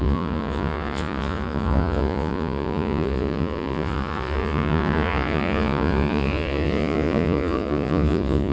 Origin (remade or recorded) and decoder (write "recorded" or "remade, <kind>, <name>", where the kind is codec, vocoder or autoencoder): remade, vocoder, Vocos